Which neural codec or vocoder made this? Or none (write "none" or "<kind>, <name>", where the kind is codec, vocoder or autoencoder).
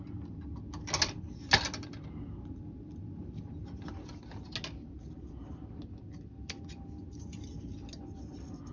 none